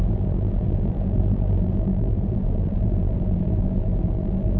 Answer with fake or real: fake